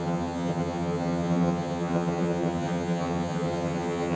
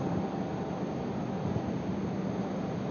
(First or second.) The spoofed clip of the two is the first